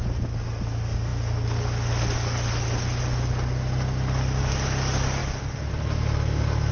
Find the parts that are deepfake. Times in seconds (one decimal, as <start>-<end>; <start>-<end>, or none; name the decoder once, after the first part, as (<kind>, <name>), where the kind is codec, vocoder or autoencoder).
none

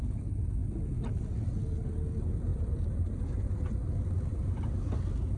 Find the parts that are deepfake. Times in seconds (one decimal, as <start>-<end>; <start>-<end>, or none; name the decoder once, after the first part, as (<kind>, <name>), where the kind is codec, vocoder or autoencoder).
2.5-3.7 (vocoder, BigVGAN v2); 4.3-4.9

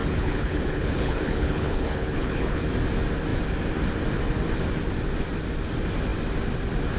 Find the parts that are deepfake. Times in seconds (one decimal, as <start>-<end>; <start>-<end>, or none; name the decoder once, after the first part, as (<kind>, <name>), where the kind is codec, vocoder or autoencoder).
0.0-2.6 (codec, HILCodec)